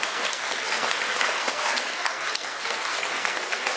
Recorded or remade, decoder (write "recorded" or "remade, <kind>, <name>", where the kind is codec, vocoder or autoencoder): remade, codec, SNAC